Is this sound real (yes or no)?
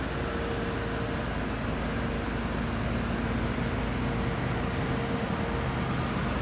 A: yes